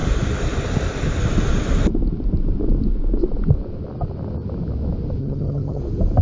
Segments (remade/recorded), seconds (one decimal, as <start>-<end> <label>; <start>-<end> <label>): 0.0-5.2 recorded; 5.2-5.8 remade; 5.8-6.2 recorded